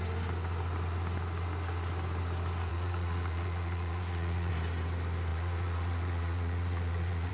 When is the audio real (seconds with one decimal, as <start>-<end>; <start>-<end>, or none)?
0.0-2.7; 4.5-5.3